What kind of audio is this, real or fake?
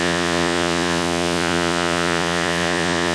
fake